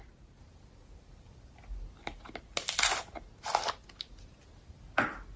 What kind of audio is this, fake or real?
real